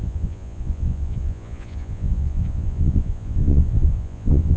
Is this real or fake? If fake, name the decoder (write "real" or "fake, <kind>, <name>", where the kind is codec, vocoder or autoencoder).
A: fake, vocoder, Vocos